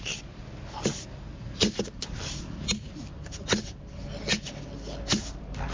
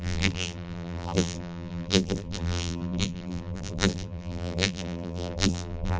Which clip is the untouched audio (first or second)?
first